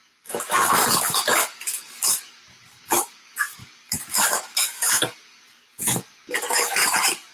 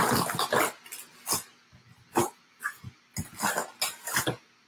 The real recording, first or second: second